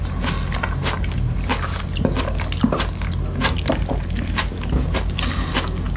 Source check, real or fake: real